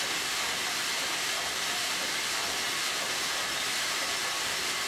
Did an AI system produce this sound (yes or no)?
no